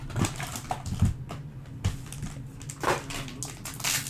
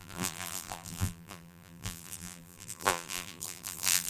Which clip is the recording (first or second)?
first